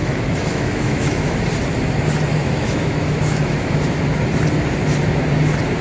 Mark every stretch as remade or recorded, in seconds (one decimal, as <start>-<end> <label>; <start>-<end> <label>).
0.0-1.4 remade; 1.4-2.3 recorded; 2.3-4.2 remade; 4.2-5.8 recorded